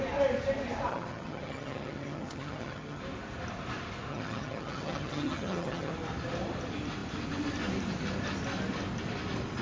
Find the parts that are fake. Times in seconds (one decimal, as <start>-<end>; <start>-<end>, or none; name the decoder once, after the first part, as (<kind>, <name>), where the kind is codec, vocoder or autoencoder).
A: 0.9-3.0 (vocoder, HiFi-GAN); 4.1-5.9

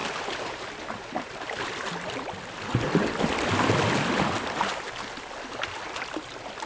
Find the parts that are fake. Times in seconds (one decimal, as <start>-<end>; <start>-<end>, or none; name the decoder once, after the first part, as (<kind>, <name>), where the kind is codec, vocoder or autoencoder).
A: 0.0-6.7 (vocoder, BigVGAN v2)

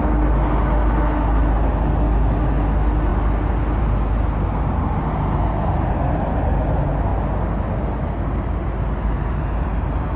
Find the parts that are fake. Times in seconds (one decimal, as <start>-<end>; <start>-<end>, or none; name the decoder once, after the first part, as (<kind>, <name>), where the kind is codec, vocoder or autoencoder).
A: none

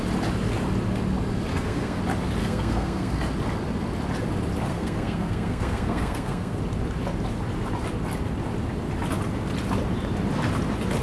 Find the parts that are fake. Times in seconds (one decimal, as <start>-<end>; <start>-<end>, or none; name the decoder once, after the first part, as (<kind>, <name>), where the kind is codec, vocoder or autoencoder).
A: 1.5-2.0 (codec, SNAC); 2.4-3.2; 4.7-6.6